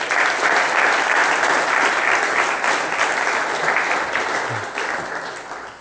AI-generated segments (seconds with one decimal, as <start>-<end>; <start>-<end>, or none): none